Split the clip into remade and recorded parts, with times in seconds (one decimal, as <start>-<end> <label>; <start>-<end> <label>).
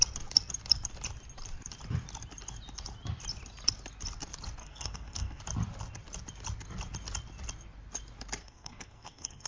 0.0-4.6 recorded; 4.6-5.4 remade; 5.4-8.4 recorded; 8.4-9.5 remade